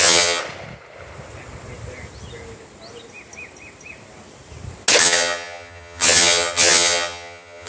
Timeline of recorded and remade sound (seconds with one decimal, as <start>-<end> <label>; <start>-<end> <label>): 0.0-0.4 remade; 0.4-5.0 recorded; 5.0-7.7 remade